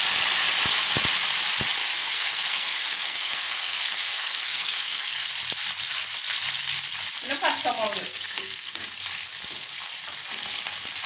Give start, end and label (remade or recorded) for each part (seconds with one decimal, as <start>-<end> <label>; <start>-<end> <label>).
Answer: 0.0-1.8 recorded; 1.8-5.3 remade; 5.3-8.1 recorded; 8.1-8.8 remade; 8.8-11.1 recorded